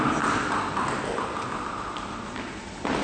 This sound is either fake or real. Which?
real